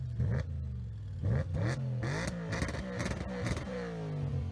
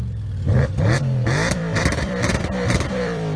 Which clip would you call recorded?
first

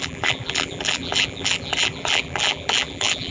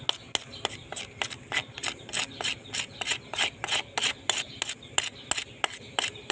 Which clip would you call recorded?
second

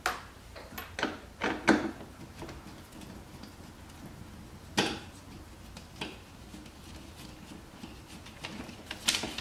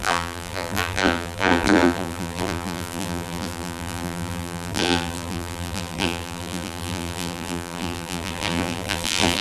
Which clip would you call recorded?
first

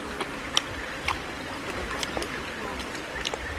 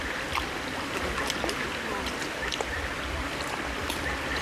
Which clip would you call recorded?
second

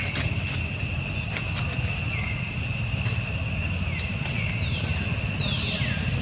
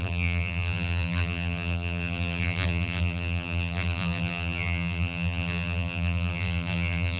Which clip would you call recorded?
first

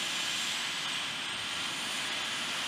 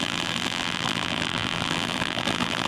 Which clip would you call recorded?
first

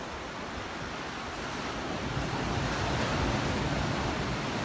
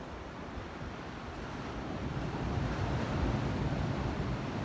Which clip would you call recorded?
first